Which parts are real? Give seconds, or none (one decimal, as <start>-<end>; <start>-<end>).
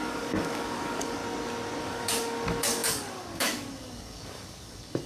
1.2-1.8